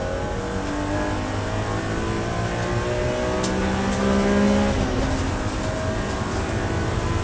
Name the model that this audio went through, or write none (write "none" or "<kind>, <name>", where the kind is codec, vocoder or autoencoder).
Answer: none